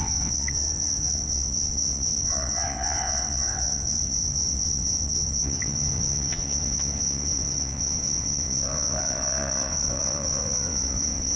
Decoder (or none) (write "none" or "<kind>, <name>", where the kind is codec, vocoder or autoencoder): vocoder, WaveNeXt